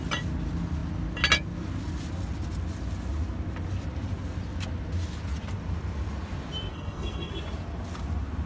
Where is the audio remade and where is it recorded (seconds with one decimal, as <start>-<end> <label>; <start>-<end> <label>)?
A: 0.0-6.7 recorded; 6.7-7.3 remade; 7.3-8.5 recorded